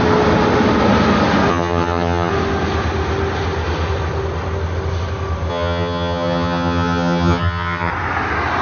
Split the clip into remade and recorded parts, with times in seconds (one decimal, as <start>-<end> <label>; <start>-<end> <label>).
0.0-1.5 recorded; 1.5-2.3 remade; 2.3-5.5 recorded; 5.5-7.9 remade; 7.9-8.6 recorded